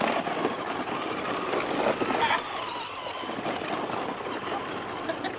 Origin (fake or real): real